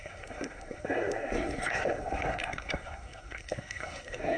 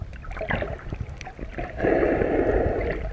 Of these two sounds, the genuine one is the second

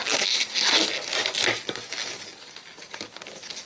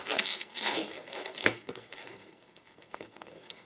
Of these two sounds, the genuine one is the first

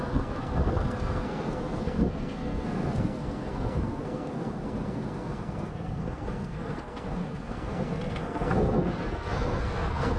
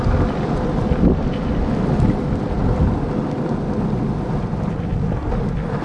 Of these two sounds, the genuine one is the second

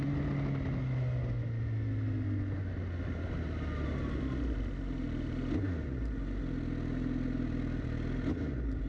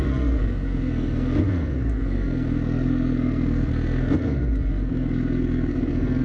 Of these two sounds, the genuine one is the first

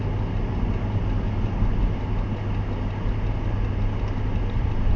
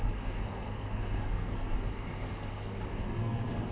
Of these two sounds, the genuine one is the first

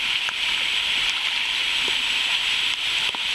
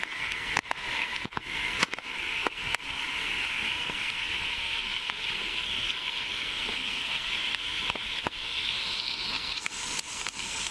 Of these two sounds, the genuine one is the first